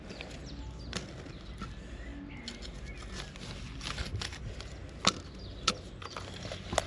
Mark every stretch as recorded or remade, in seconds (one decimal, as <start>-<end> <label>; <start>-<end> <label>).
0.0-6.9 recorded